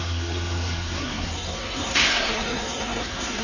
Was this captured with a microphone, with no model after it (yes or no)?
no